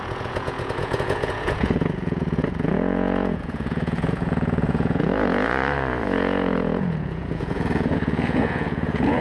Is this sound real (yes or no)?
no